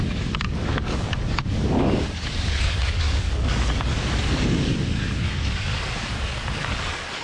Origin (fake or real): fake